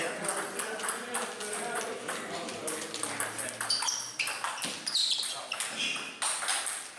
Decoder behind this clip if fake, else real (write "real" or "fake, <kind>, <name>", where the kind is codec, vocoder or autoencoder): real